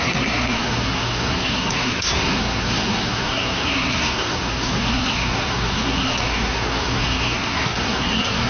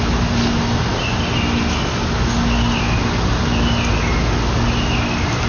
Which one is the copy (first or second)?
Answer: first